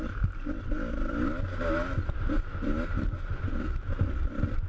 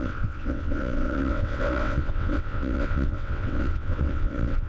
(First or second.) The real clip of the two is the first